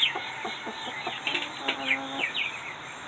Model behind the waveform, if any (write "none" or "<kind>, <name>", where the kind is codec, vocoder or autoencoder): vocoder, BigVGAN v2